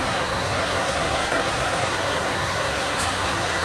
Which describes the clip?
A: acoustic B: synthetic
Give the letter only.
B